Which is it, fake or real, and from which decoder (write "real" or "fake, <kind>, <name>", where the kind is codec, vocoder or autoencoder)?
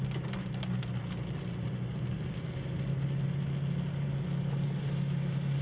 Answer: real